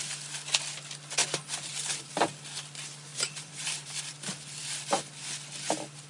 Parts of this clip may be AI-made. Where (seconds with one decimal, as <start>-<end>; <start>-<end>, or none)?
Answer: 1.2-2.1; 3.1-4.1